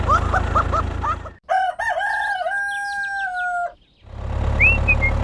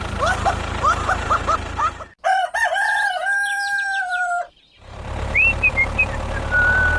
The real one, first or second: first